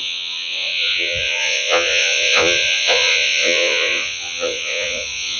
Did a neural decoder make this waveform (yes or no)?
yes